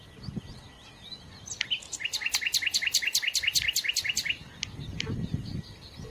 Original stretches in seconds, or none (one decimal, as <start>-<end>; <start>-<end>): 0.0-6.1